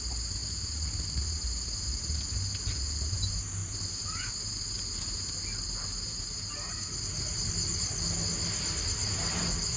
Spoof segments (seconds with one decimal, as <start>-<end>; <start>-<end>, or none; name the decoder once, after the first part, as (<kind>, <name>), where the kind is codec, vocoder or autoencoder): none